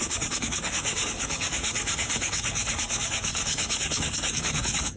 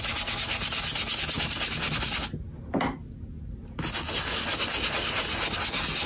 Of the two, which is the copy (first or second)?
first